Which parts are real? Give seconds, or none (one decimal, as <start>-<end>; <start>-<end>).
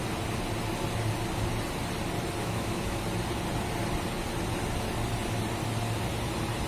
0.0-2.4; 3.0-6.7